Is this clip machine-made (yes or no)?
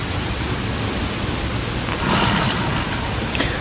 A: no